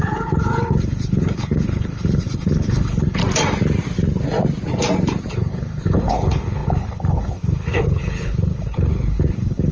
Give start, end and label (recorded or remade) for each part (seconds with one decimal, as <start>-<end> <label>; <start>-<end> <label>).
0.0-3.2 remade; 3.2-5.3 recorded; 5.3-9.7 remade